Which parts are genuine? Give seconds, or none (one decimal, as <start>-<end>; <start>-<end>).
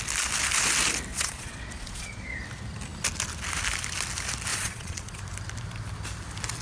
0.0-1.1; 2.4-4.5; 5.2-6.6